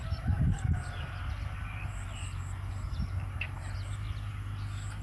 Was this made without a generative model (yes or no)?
yes